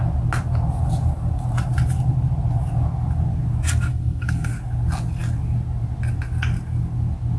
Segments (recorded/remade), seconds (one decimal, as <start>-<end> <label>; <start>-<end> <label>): 0.0-3.9 recorded; 3.9-4.5 remade; 4.5-7.4 recorded